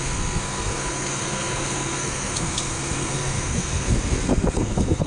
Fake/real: fake